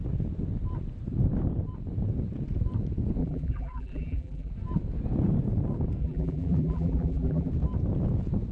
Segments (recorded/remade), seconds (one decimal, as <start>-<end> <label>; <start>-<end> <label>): 0.0-3.2 recorded; 3.2-4.5 remade; 4.5-6.0 recorded; 6.0-7.5 remade; 7.5-8.5 recorded